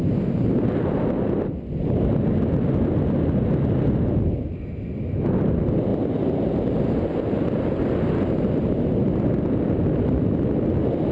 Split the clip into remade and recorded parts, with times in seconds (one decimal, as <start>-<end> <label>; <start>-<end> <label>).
0.0-11.1 recorded